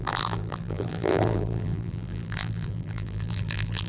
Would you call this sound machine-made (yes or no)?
yes